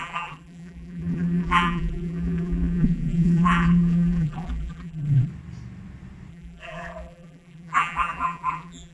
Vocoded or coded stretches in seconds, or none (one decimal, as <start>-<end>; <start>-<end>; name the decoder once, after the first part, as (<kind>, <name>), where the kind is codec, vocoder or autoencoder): 0.0-5.3 (vocoder, BigVGAN v2); 6.3-8.9